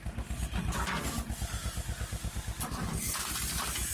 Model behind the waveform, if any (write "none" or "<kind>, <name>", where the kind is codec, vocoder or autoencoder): none